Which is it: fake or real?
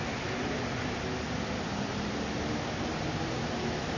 real